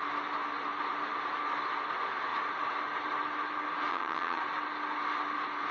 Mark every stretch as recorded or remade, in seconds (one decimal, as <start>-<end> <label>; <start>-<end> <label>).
0.0-3.9 recorded; 3.9-4.4 remade; 4.4-5.7 recorded